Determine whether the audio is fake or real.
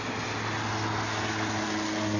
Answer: real